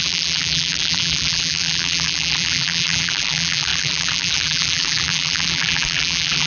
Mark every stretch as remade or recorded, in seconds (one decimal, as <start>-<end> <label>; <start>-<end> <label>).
0.0-6.5 remade